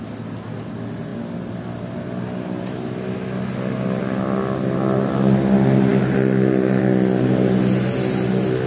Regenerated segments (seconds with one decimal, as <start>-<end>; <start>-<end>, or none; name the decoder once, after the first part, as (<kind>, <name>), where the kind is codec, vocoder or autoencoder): none